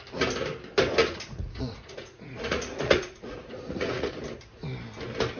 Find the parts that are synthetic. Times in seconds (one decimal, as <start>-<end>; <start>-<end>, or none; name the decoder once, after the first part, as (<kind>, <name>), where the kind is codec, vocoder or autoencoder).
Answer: 1.0-4.2 (vocoder, Vocos)

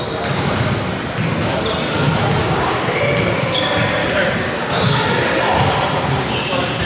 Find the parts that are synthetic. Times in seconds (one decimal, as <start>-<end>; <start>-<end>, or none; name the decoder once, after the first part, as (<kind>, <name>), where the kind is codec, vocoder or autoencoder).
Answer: 2.4-2.9 (codec, DAC); 4.0-5.0

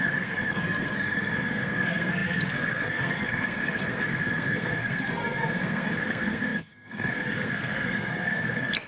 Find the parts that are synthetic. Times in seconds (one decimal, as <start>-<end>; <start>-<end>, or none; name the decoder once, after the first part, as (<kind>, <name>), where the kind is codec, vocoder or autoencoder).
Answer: 0.0-8.9 (codec, SNAC)

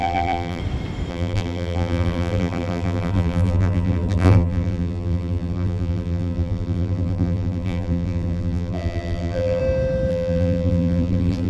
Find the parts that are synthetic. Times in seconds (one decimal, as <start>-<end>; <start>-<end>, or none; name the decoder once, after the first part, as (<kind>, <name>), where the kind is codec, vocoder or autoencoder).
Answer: 0.0-0.6 (vocoder, BigVGAN v2); 1.1-9.6; 10.1-11.5

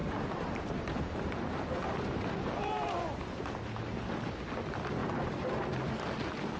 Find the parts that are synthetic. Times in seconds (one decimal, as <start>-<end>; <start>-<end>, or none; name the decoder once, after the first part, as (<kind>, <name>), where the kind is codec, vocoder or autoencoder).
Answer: 0.0-4.0 (vocoder, BigVGAN v2); 5.0-5.6

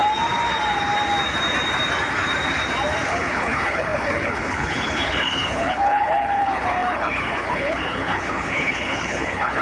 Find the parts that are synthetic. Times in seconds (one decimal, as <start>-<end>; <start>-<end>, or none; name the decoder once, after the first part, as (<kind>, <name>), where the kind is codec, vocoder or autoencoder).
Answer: 3.1-9.6 (codec, HILCodec)